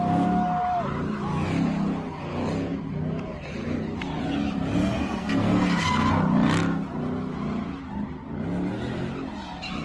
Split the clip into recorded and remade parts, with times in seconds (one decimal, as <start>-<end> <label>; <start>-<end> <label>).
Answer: 0.0-4.8 recorded; 4.8-6.1 remade; 6.1-9.8 recorded